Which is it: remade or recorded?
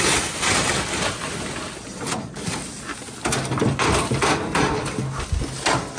recorded